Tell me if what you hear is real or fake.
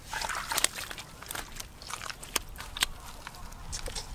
real